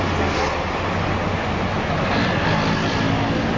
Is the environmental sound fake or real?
real